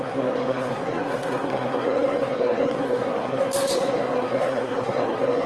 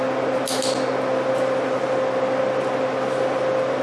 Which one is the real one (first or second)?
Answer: second